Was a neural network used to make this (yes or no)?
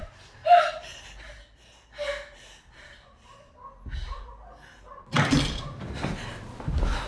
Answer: no